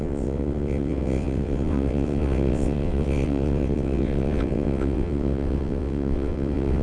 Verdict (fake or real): fake